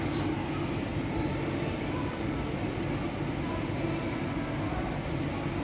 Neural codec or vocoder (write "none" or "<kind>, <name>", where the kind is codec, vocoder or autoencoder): none